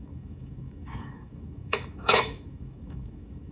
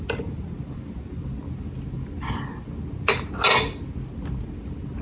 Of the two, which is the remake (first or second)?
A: first